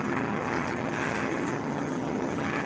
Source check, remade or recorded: remade